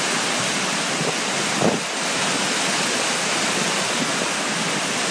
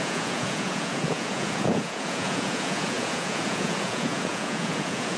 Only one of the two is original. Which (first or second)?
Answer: first